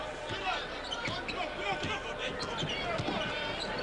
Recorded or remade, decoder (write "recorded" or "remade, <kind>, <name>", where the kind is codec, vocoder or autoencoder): recorded